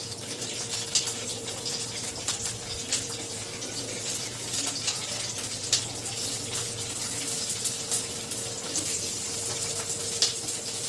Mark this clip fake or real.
real